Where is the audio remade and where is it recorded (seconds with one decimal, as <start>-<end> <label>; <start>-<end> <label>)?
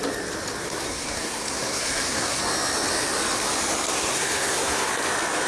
0.0-0.6 recorded; 0.6-2.4 remade; 2.4-3.9 recorded; 3.9-4.9 remade; 4.9-5.5 recorded